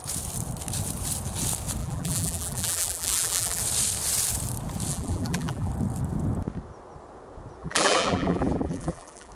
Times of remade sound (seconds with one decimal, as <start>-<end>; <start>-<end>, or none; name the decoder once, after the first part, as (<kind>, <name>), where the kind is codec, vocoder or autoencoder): 1.8-3.6 (vocoder, BigVGAN v2); 4.9-5.7; 7.6-9.3